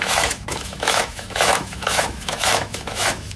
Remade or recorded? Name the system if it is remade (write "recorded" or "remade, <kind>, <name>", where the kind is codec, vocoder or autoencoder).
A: remade, autoencoder, DAC-VAE